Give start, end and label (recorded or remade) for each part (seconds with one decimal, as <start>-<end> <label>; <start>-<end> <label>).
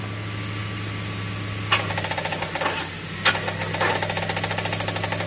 0.0-3.7 recorded; 3.7-4.2 remade; 4.2-5.3 recorded